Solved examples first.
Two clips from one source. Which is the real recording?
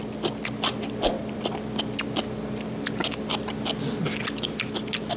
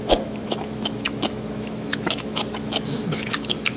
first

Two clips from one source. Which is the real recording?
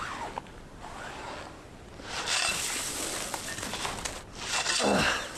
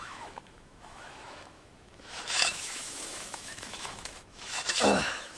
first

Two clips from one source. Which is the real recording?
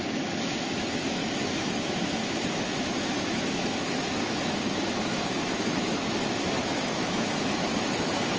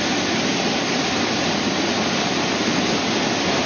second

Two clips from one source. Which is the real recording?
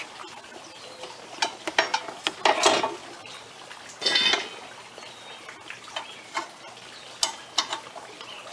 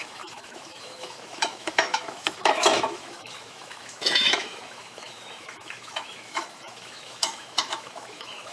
first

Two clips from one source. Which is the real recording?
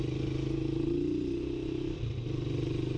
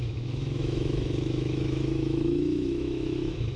first